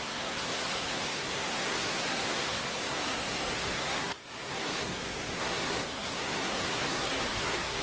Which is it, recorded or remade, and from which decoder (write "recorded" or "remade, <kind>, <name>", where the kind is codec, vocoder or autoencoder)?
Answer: remade, codec, SNAC